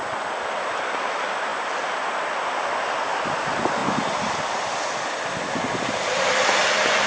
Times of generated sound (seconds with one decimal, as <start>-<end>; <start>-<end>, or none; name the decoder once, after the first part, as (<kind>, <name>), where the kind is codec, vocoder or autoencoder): none